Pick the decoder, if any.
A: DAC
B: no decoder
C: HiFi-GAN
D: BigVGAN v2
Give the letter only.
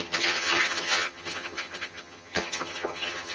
C